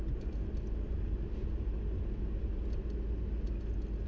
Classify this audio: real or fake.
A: real